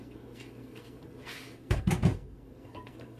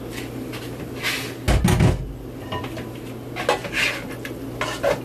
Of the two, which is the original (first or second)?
second